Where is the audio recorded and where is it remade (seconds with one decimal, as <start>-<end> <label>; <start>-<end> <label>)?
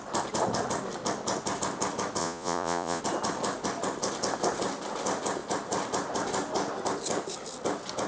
0.0-2.2 recorded; 2.2-3.0 remade; 3.0-8.1 recorded